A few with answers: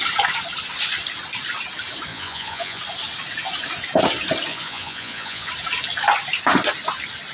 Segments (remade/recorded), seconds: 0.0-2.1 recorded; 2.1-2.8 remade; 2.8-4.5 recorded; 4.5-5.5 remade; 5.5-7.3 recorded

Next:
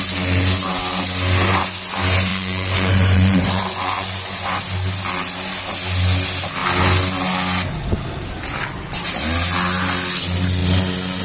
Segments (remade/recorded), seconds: 0.0-2.3 recorded; 2.3-4.6 remade; 4.6-11.2 recorded

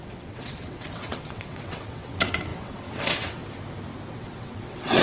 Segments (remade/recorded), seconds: 0.0-3.4 remade; 3.4-4.1 recorded; 4.1-5.0 remade

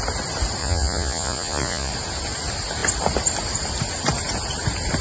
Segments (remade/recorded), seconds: 0.0-0.6 recorded; 0.6-1.9 remade; 1.9-5.0 recorded

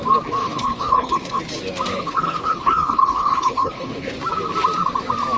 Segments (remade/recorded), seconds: 0.0-0.4 recorded; 0.4-1.4 remade; 1.4-1.9 recorded; 1.9-4.1 remade; 4.1-5.4 recorded

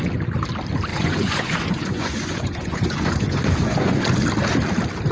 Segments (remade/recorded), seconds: 0.0-0.9 recorded; 0.9-4.0 remade; 4.0-5.1 recorded

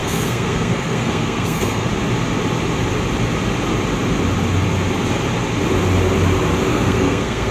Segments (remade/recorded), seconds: 0.0-1.9 remade; 1.9-6.7 recorded; 6.7-7.5 remade

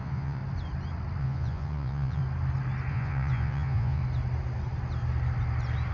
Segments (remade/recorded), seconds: 0.0-0.4 remade; 0.4-1.2 recorded; 1.2-2.2 remade; 2.2-2.9 recorded; 2.9-4.0 remade; 4.0-5.9 recorded